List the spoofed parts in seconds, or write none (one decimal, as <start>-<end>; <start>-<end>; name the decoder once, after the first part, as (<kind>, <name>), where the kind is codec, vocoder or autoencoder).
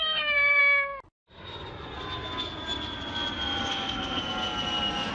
0.0-0.6 (codec, SNAC); 3.7-4.2